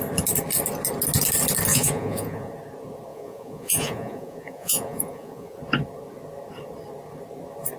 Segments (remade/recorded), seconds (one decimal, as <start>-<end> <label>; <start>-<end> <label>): 0.0-1.7 recorded; 1.7-2.5 remade; 2.5-3.1 recorded; 3.1-5.6 remade; 5.6-7.8 recorded